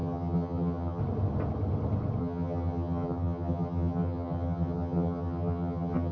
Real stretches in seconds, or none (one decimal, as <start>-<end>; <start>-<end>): 1.0-2.2